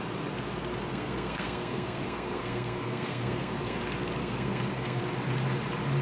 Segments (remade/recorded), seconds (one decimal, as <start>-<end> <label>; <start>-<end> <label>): 0.0-0.9 recorded; 0.9-3.8 remade; 3.8-4.2 recorded; 4.2-5.0 remade; 5.0-6.0 recorded